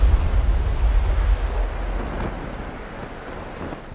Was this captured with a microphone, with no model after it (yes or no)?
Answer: yes